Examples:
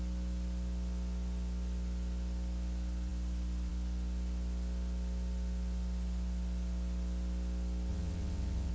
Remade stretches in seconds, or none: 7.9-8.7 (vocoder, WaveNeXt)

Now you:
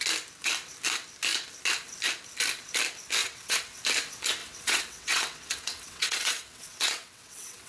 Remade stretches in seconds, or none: 3.2-3.8 (vocoder, WaveNeXt); 4.4-7.7

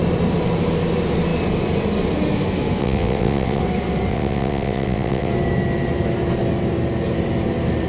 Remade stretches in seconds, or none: 2.8-3.6 (vocoder, WaveNeXt); 4.1-5.3

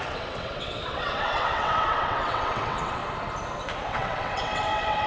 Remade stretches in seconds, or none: 0.0-3.0 (vocoder, WaveNeXt); 3.9-5.1